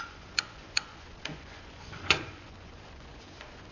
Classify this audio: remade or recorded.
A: remade